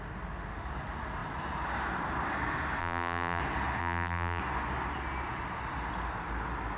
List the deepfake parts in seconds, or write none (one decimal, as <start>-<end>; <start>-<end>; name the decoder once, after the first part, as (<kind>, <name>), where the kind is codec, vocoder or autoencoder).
2.8-3.4 (vocoder, BigVGAN v2); 3.8-4.4